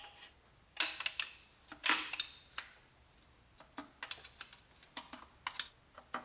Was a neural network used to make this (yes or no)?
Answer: no